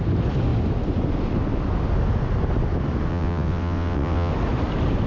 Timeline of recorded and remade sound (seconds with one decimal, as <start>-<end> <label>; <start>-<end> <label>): 0.0-3.1 recorded; 3.1-4.3 remade; 4.3-5.1 recorded